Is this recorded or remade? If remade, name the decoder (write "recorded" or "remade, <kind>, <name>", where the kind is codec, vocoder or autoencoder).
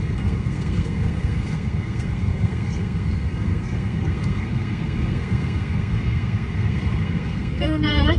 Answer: remade, codec, SNAC